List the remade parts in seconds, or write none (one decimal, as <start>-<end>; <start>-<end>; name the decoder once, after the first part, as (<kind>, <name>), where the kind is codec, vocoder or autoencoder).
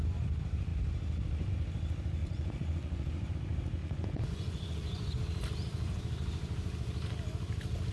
2.2-3.3 (vocoder, Vocos); 3.8-5.2